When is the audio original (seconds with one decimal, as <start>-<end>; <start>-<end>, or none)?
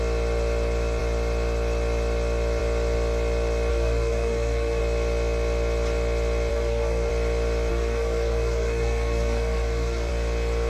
0.0-3.7; 4.8-6.5; 7.1-7.7; 10.1-10.7